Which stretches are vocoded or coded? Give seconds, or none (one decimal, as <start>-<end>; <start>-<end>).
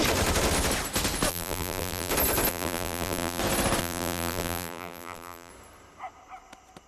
1.3-2.1; 2.5-3.4; 3.8-5.5